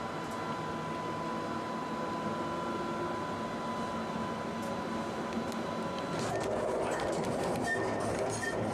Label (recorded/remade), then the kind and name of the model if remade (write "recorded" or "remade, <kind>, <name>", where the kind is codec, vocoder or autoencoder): recorded